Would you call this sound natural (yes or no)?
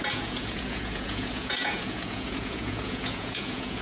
no